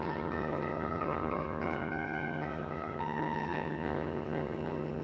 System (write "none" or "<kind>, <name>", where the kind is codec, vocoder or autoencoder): vocoder, HiFi-GAN